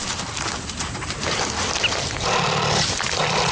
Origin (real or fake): real